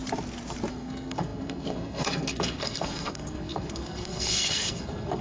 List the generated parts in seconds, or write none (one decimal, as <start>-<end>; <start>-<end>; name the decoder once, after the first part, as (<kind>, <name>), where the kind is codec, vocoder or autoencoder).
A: 0.7-5.2 (codec, SNAC)